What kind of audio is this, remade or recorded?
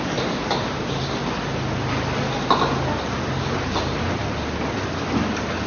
recorded